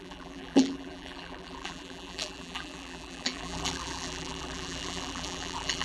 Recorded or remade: remade